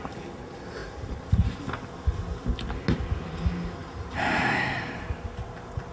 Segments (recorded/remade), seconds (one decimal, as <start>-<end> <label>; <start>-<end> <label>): 0.0-0.8 recorded; 0.8-1.6 remade; 1.6-3.8 recorded; 3.8-4.8 remade; 4.8-5.9 recorded

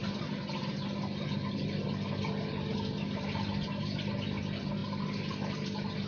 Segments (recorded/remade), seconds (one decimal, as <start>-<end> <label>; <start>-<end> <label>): 0.0-6.1 recorded

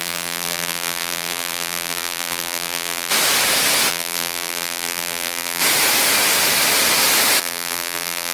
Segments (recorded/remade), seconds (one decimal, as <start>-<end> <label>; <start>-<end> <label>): 0.0-3.1 remade; 3.1-3.9 recorded; 3.9-5.6 remade; 5.6-7.4 recorded; 7.4-8.3 remade

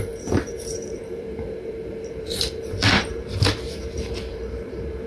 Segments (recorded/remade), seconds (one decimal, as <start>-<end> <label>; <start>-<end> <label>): 0.0-5.1 remade

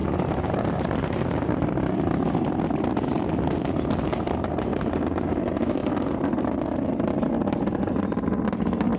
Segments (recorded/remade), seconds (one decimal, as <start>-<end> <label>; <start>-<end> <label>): 0.0-9.0 remade

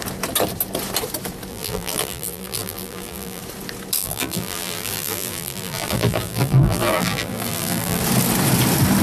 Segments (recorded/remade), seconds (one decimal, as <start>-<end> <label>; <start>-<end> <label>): 0.0-1.5 recorded; 1.5-3.4 remade; 3.4-4.0 recorded; 4.0-8.0 remade; 8.0-9.0 recorded

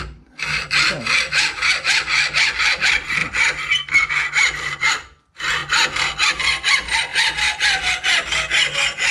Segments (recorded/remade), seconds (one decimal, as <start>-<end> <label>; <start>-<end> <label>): 0.0-7.1 recorded; 7.1-7.9 remade; 7.9-9.1 recorded